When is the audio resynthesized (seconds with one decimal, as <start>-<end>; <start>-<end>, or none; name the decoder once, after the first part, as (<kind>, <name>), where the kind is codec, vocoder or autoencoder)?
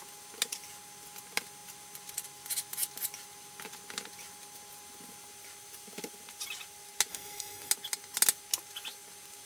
7.1-7.7 (codec, SNAC)